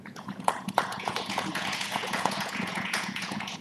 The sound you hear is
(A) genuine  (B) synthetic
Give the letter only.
B